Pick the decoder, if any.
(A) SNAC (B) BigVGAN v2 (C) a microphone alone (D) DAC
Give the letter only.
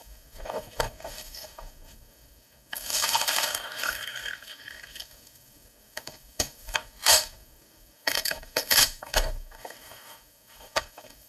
D